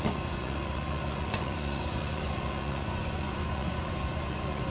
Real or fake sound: fake